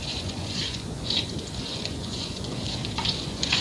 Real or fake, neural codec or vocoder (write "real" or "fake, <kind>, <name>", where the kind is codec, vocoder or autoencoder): fake, vocoder, Vocos